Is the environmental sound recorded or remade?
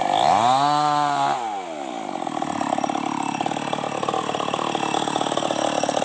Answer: recorded